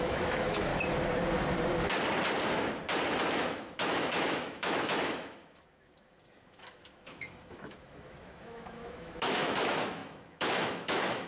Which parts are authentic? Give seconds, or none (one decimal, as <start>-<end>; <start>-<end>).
0.7-3.2